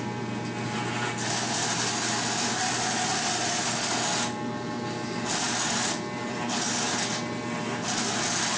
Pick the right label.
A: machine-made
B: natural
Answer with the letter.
B